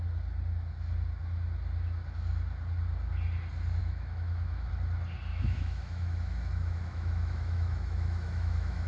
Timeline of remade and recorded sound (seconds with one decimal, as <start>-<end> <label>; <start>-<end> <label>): 0.0-3.8 recorded; 3.8-4.7 remade; 4.7-5.3 recorded; 5.3-8.9 remade